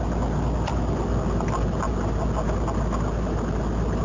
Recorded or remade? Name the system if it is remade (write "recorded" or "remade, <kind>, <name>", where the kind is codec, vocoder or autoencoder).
recorded